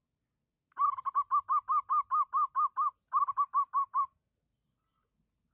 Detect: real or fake real